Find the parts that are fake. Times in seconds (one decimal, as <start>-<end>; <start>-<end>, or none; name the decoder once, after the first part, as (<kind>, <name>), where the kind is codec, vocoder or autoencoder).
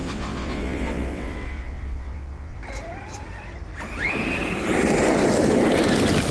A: 0.0-2.6 (vocoder, WaveNeXt)